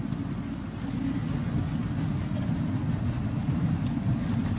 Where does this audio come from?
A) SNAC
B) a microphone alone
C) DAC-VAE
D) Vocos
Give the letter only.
B